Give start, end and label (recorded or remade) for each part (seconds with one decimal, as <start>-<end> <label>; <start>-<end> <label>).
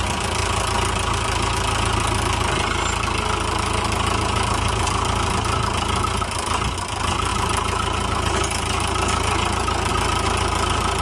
0.0-7.3 recorded; 7.3-9.9 remade; 9.9-11.0 recorded